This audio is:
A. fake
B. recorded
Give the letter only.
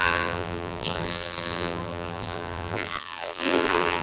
A